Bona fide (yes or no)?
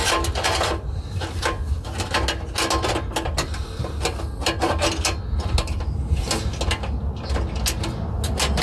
yes